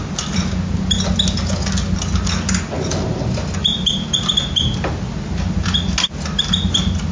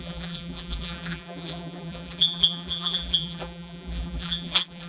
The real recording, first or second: first